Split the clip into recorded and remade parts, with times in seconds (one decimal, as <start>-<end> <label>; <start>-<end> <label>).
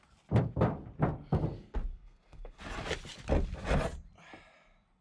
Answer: 0.0-1.9 recorded; 1.9-2.6 remade; 2.6-5.0 recorded